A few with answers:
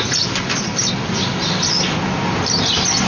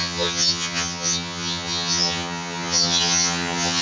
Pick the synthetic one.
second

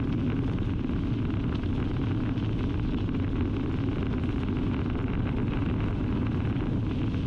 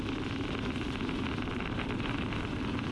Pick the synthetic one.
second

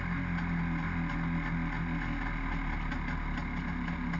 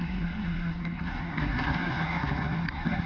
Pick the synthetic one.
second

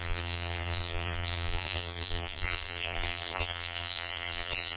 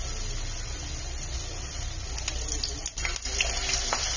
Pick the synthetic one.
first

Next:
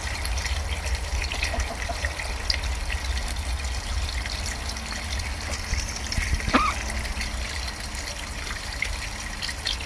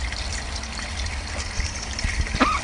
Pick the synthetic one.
second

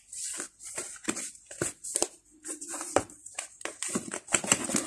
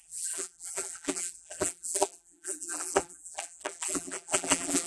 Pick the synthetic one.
second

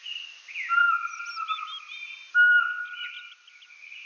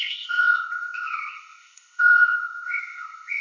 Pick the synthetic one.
second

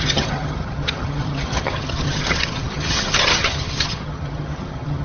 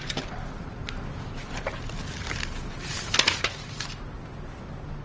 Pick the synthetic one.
first